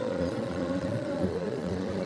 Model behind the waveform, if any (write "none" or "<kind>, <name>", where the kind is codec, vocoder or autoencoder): vocoder, Vocos